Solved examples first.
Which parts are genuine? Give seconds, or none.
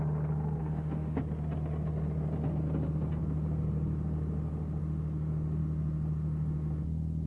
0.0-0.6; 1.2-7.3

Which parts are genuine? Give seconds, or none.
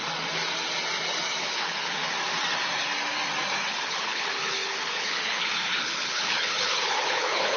0.0-1.4; 2.0-3.7